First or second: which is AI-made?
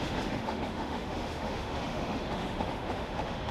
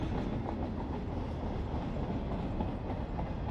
first